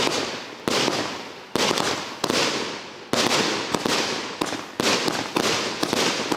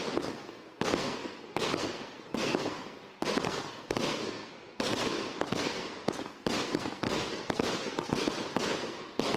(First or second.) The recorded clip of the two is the first